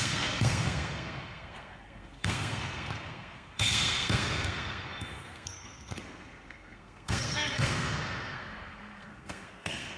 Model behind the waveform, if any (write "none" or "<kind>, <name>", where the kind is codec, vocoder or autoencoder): codec, SNAC